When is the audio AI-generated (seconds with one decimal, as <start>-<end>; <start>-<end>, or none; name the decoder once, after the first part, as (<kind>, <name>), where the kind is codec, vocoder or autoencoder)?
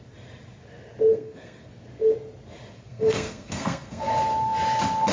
1.1-1.7 (codec, SNAC); 2.9-4.1